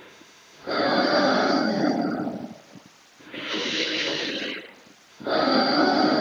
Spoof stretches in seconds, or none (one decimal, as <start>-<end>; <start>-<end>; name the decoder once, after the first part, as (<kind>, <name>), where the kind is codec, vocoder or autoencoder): 0.0-1.8 (autoencoder, DAC-VAE); 3.2-4.3; 5.1-6.2